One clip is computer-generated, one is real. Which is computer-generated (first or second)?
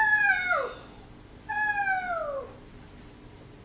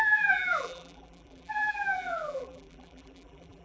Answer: second